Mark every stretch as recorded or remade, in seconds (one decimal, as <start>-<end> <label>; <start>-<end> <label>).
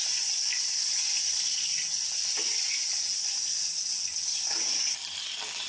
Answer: 0.0-5.7 recorded